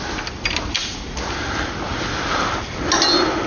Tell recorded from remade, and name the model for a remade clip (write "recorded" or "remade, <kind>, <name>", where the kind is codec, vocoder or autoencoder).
recorded